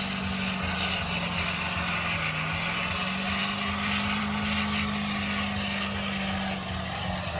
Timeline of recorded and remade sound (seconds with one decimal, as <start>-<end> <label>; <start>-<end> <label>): 0.0-7.4 recorded